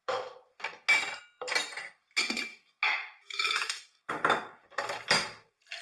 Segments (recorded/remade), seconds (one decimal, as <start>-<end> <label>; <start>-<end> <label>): 0.0-2.5 recorded; 2.5-4.1 remade; 4.1-5.8 recorded